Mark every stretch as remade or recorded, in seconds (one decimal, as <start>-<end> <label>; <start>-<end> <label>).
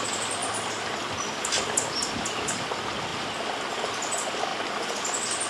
0.0-5.5 recorded